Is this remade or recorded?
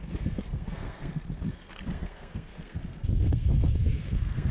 remade